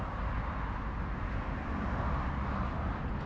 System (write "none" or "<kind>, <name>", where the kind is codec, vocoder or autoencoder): none